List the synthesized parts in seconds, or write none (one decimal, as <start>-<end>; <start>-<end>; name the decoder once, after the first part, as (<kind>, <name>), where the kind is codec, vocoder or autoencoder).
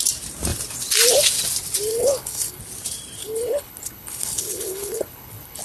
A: 1.9-2.6 (codec, HILCodec); 3.2-5.6